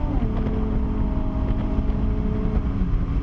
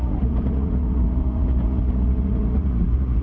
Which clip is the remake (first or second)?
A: second